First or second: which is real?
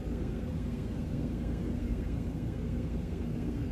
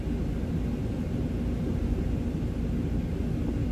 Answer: second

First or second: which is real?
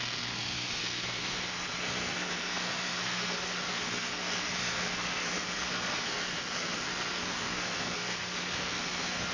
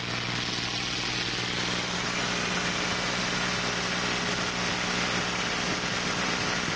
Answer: second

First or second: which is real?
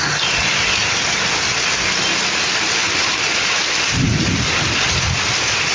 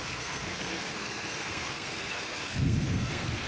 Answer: first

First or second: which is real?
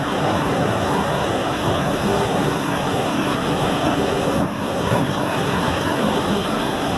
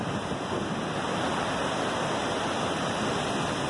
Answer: second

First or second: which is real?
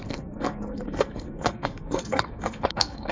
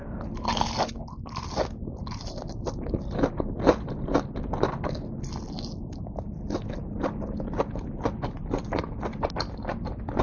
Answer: second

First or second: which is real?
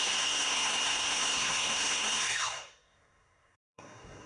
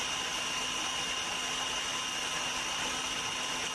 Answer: second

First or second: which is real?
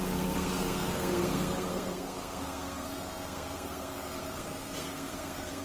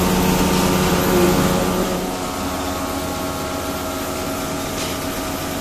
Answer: second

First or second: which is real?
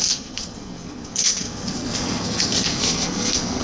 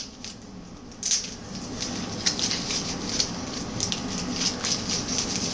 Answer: second